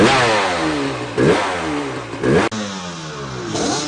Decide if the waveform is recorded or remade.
recorded